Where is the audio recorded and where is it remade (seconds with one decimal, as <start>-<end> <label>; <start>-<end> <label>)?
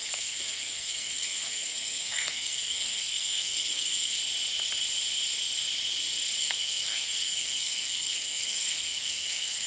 0.0-4.2 remade; 4.2-6.4 recorded; 6.4-9.7 remade